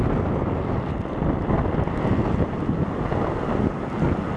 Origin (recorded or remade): recorded